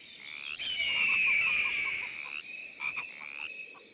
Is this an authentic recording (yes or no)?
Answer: yes